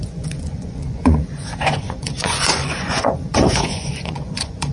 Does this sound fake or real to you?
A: fake